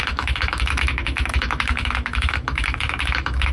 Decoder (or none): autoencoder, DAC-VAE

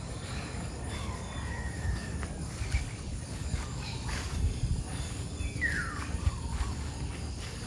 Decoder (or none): codec, DAC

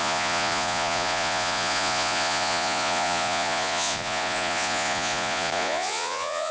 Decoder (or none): vocoder, Vocos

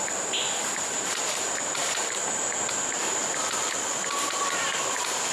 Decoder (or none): none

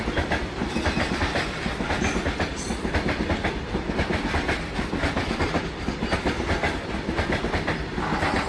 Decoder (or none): none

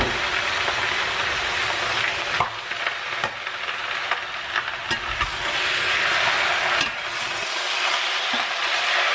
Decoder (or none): none